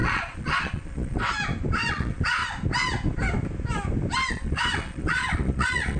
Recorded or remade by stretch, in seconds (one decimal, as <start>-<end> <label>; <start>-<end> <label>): 0.0-1.2 remade; 1.2-1.9 recorded; 1.9-2.4 remade; 2.4-4.3 recorded; 4.3-6.0 remade